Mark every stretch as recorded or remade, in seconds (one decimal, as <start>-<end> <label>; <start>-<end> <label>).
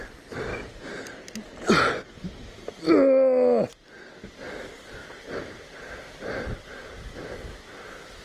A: 0.0-8.2 recorded